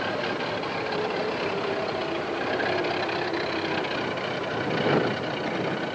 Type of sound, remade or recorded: recorded